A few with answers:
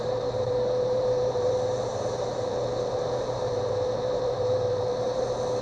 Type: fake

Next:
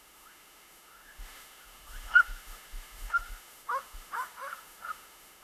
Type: fake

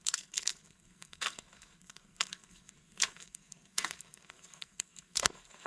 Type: fake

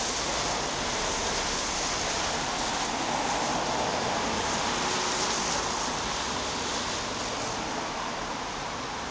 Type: real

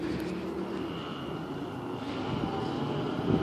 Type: real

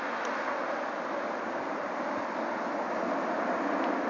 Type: real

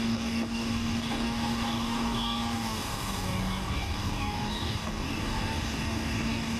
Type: fake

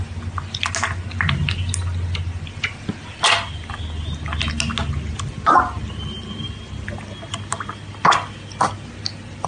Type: real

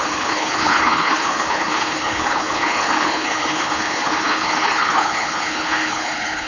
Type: fake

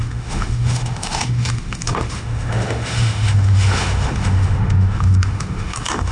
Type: fake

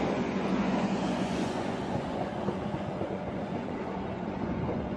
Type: fake